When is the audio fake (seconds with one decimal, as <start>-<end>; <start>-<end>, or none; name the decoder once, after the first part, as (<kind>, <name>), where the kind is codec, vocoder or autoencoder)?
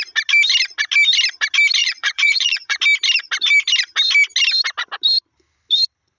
1.8-2.8 (vocoder, Vocos)